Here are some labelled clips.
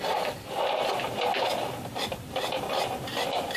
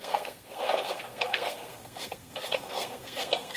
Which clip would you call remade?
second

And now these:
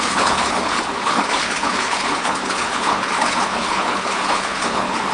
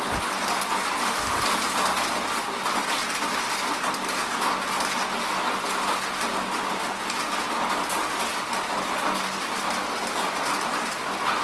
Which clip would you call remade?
first